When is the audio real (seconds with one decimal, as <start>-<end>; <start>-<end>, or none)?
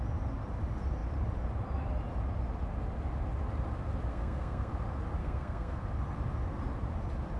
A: 0.0-4.1; 4.7-5.2; 5.8-7.4